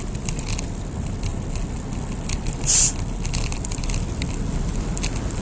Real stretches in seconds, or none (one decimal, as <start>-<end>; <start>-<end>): 0.0-5.4